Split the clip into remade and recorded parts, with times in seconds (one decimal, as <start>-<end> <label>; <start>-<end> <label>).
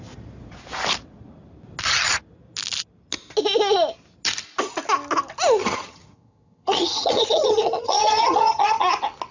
0.0-5.6 recorded; 5.6-8.9 remade; 8.9-9.3 recorded